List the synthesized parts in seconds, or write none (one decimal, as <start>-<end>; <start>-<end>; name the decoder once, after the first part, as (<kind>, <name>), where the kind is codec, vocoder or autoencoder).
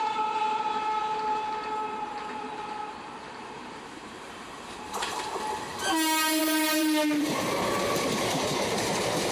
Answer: 0.0-5.7 (vocoder, BigVGAN v2); 6.4-9.3